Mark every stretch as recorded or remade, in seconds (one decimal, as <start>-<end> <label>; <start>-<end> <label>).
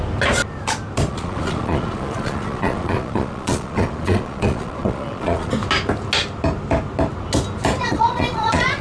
0.0-1.1 recorded; 1.1-5.5 remade; 5.5-7.8 recorded; 7.8-8.8 remade